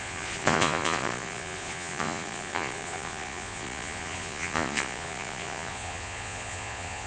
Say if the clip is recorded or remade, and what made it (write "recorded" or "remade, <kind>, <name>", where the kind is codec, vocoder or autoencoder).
remade, vocoder, Vocos